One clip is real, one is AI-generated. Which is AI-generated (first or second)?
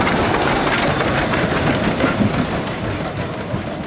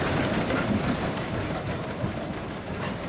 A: second